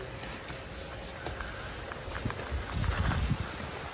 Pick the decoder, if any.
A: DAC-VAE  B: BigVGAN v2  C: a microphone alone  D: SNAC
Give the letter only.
C